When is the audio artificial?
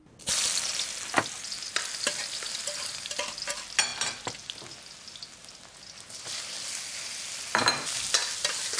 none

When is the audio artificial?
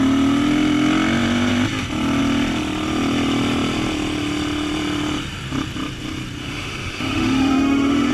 6.4-8.1 (autoencoder, DAC-VAE)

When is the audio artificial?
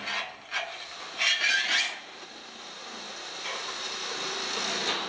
none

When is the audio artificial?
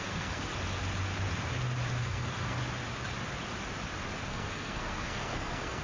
0.0-0.5 (codec, SNAC); 2.0-2.6; 4.3-5.8